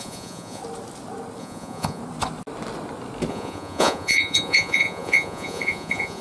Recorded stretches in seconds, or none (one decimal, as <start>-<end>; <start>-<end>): 0.6-1.4; 2.0-3.3